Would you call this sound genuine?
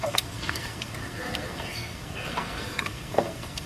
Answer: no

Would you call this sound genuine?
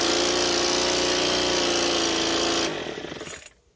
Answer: yes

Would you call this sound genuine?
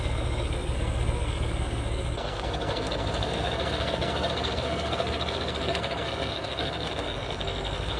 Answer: no